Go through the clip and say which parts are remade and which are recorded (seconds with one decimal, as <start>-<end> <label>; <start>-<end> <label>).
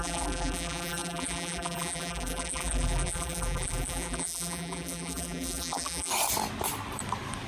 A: 0.0-6.1 remade; 6.1-7.5 recorded